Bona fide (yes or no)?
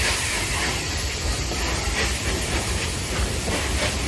no